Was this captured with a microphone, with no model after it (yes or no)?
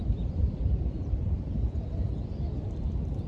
no